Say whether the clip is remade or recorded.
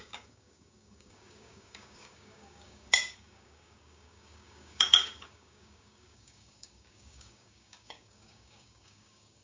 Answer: remade